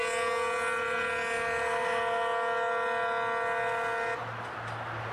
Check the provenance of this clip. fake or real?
real